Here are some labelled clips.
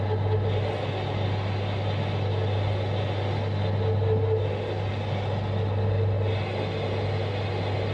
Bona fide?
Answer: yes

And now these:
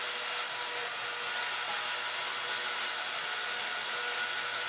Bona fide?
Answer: yes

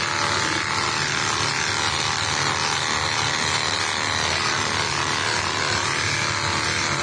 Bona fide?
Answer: yes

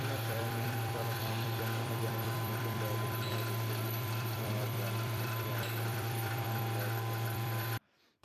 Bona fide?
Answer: no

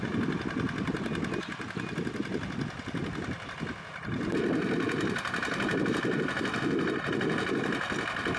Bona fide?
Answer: yes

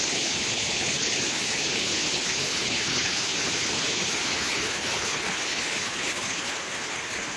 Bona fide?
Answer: no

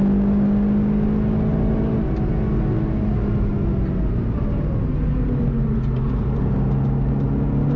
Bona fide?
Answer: yes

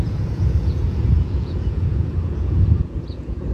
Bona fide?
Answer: no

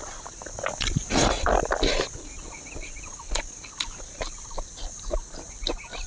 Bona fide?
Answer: yes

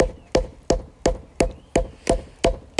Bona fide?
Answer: yes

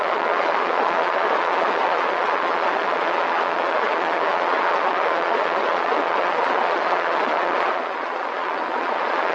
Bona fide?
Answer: no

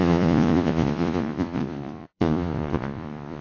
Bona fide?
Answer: no